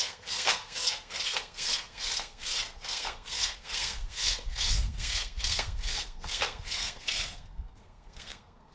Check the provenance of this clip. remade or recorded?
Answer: remade